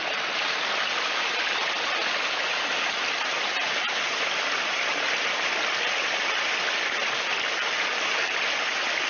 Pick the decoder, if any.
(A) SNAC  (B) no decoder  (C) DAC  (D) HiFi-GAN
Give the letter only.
B